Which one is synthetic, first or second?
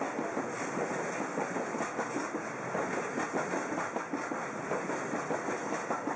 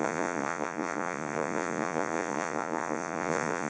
second